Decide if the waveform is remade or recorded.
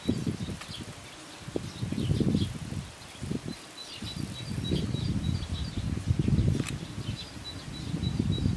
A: recorded